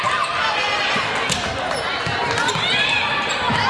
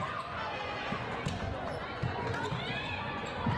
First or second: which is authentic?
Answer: first